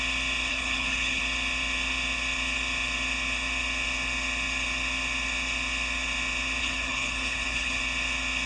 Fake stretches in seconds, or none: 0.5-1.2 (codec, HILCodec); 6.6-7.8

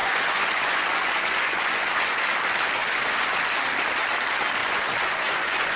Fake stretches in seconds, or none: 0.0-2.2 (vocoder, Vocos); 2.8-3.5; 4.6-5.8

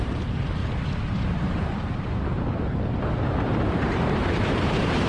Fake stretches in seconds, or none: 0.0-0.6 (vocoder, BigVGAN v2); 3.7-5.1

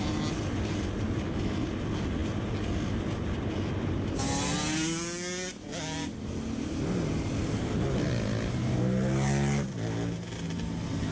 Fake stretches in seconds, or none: none

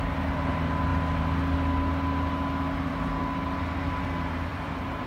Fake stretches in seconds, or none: 4.5-5.1 (vocoder, BigVGAN v2)

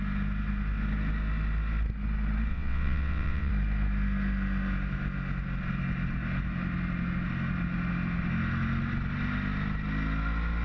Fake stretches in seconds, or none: 2.5-3.5 (vocoder, WaveNeXt)

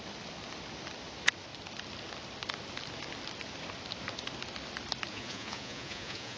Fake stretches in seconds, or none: 5.1-6.4 (vocoder, Vocos)

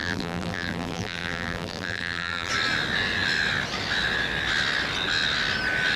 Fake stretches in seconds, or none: 0.0-2.5 (vocoder, BigVGAN v2)